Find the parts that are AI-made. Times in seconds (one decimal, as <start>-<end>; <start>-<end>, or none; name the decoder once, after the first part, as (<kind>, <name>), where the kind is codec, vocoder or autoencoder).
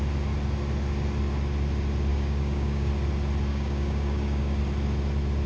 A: 2.1-2.9 (codec, DAC); 3.5-4.6